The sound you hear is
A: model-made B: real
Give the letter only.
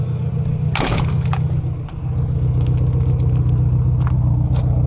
B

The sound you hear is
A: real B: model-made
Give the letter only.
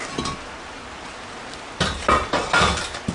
A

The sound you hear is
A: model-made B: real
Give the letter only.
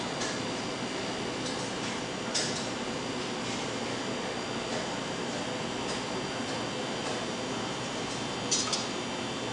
B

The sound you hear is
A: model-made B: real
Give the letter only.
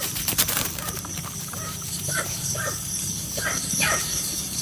A